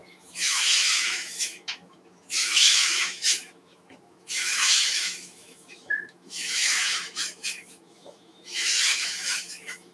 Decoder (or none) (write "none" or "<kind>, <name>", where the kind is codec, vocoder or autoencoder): autoencoder, DAC-VAE